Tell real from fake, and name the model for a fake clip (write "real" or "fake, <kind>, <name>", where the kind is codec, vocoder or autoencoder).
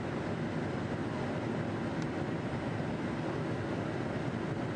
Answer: real